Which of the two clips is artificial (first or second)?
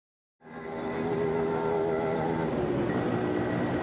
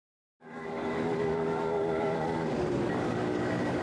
second